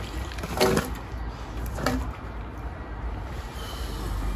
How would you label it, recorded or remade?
recorded